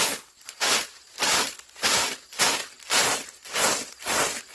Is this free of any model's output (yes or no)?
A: no